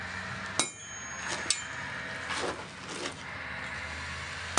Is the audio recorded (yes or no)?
yes